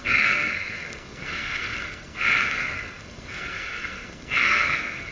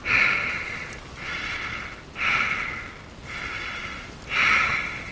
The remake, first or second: first